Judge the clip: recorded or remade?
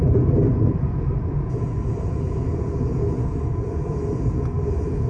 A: remade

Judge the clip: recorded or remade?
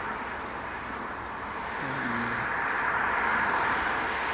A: recorded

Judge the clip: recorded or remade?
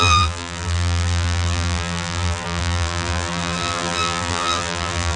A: remade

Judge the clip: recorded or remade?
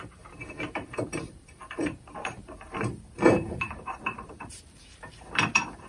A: remade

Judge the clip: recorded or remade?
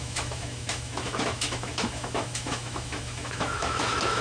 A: remade